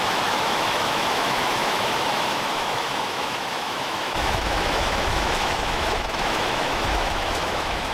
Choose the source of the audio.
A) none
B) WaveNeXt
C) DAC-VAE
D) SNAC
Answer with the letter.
C